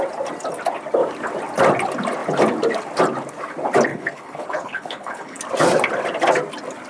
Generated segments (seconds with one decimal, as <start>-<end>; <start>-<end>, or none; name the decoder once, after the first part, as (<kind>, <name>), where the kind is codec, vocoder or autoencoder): 3.9-5.4 (codec, HILCodec)